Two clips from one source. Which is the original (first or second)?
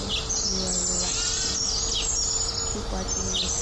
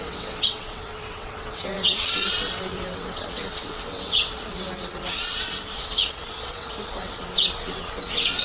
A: first